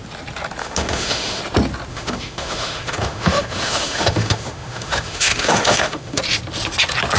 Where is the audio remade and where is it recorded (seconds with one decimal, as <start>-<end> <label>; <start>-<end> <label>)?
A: 0.0-0.6 recorded; 0.6-1.4 remade; 1.4-1.9 recorded; 1.9-6.2 remade; 6.2-7.2 recorded